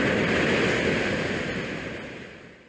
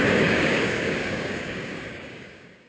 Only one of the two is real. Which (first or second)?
first